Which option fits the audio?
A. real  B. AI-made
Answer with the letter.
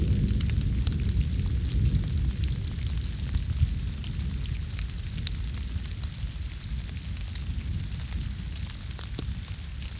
A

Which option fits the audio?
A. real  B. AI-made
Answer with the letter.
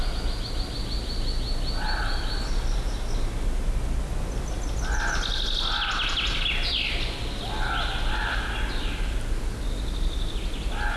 A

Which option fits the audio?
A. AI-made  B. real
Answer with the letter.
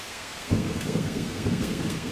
A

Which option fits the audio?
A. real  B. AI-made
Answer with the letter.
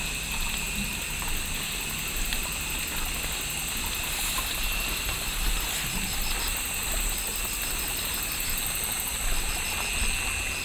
A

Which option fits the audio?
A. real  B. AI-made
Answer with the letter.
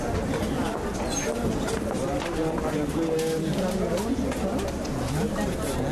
A